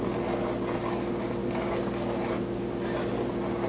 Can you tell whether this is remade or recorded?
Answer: recorded